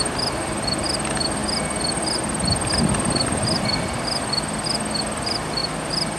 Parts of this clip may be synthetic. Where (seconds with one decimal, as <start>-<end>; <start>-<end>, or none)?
none